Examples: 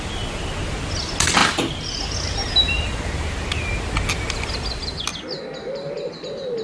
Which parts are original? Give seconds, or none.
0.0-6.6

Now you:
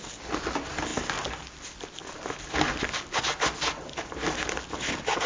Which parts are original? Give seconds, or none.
0.0-5.3

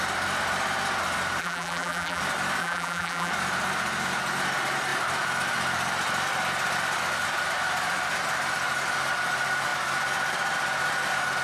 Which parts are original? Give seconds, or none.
0.0-1.4; 2.2-2.6; 3.3-11.4

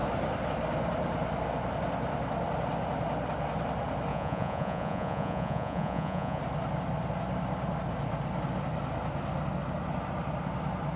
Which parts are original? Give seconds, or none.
0.0-4.1; 6.4-11.0

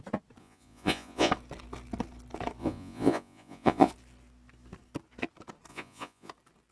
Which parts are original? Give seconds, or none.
0.0-0.4; 1.3-2.6; 3.9-5.7; 6.3-6.7